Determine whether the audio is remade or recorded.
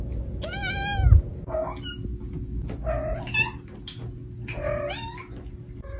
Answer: recorded